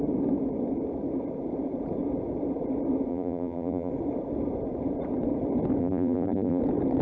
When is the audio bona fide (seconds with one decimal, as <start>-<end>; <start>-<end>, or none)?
0.0-3.1; 3.9-5.8; 6.6-7.0